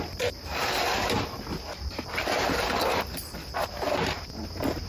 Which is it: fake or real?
real